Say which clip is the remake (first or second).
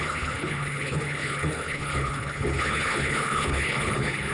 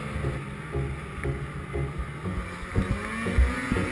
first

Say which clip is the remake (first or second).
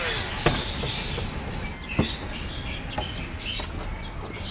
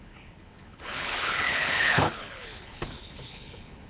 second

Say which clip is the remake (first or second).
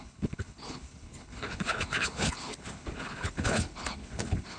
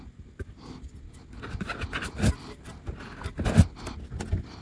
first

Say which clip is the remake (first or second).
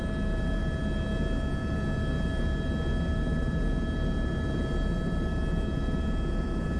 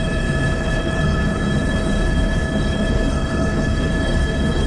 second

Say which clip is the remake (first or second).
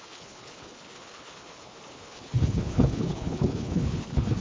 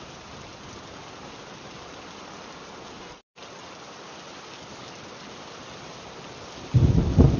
first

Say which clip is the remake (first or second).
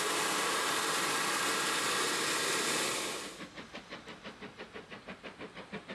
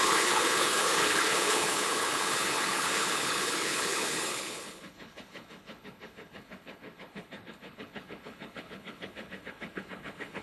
second